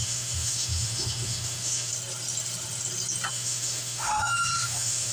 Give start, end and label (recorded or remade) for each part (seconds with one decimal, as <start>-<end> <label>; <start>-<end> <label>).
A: 0.0-1.9 remade; 1.9-3.3 recorded; 3.3-5.1 remade